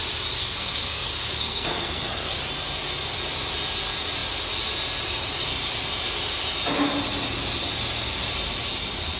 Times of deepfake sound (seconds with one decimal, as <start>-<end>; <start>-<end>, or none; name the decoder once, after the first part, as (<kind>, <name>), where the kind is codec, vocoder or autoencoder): 0.4-2.4 (codec, SNAC)